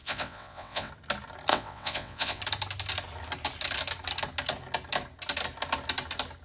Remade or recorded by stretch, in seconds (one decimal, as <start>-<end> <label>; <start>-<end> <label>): 0.0-0.9 remade; 0.9-1.5 recorded; 1.5-2.4 remade; 2.4-6.4 recorded